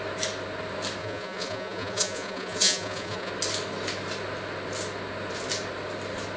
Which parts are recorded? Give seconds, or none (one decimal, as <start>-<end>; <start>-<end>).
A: 0.0-1.0; 3.3-6.4